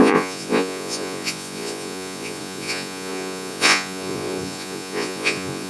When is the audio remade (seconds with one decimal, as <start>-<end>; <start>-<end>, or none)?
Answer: 0.0-5.7